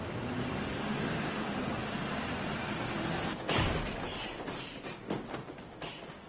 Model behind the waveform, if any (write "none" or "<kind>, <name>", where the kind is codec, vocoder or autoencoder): none